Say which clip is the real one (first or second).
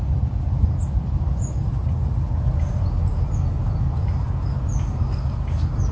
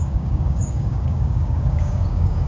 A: first